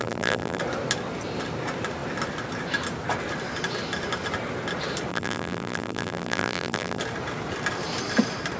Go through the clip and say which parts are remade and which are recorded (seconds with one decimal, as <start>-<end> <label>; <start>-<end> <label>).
0.0-0.6 remade; 0.6-5.1 recorded; 5.1-7.0 remade; 7.0-8.6 recorded